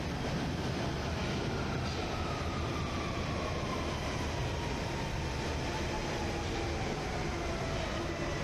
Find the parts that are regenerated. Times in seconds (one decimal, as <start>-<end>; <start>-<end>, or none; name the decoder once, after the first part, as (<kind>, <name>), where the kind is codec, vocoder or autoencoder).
none